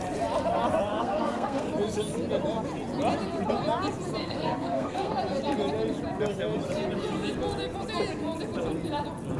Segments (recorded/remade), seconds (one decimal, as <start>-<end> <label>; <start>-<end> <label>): 0.0-0.9 recorded; 0.9-1.7 remade; 1.7-4.2 recorded; 4.2-5.1 remade; 5.1-9.4 recorded